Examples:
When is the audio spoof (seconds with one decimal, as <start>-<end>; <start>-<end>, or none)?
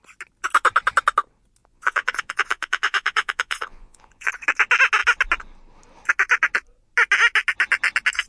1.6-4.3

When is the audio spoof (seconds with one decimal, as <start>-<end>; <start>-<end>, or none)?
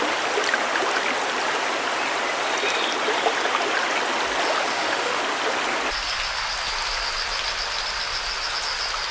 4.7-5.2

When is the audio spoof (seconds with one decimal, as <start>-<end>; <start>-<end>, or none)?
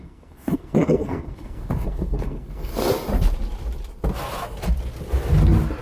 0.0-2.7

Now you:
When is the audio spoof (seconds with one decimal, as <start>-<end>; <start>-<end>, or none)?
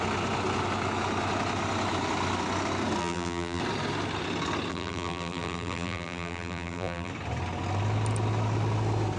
3.0-3.6; 4.7-7.1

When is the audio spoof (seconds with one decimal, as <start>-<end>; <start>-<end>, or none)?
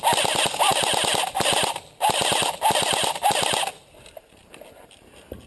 none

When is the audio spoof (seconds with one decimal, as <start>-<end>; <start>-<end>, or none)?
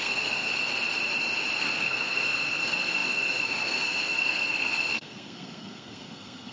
0.0-0.5; 1.6-6.5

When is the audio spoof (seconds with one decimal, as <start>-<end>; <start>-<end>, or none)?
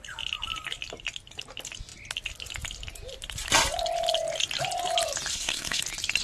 5.3-5.8